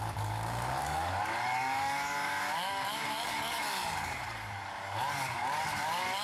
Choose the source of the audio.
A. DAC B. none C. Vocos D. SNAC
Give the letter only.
A